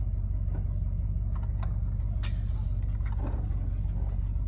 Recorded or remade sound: recorded